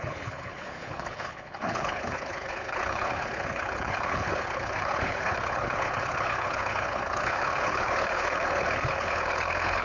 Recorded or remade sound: remade